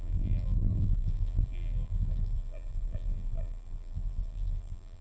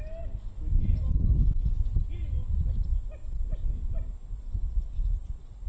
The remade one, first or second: first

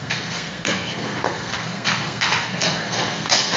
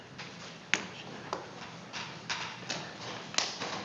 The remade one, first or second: first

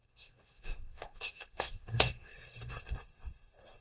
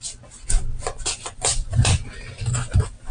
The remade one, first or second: first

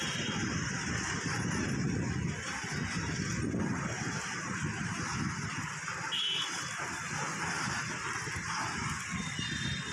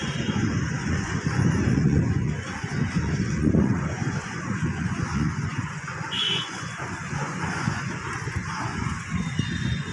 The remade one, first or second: second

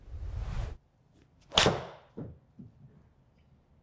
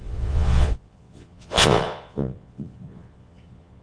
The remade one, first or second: second